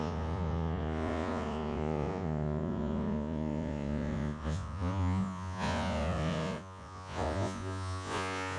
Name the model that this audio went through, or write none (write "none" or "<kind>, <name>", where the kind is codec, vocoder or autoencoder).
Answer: vocoder, Vocos